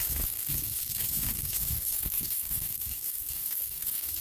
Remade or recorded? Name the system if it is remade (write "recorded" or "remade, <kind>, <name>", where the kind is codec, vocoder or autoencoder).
remade, codec, DAC